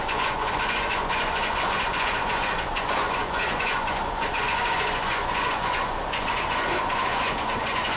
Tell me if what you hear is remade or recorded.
remade